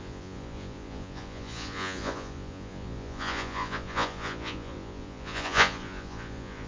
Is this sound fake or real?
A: fake